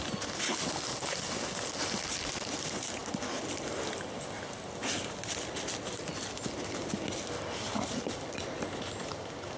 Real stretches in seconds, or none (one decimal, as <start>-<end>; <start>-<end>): 0.0-9.6